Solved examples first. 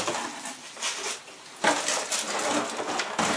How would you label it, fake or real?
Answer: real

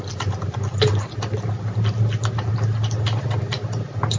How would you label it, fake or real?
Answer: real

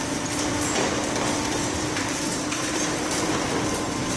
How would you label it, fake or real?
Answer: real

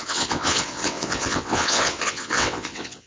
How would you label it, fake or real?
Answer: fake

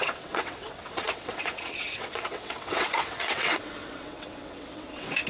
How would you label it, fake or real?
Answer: fake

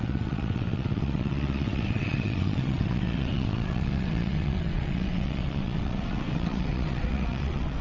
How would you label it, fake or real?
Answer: fake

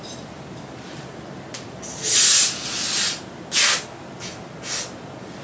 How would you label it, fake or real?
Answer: real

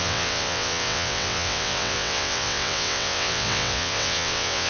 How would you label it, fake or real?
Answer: fake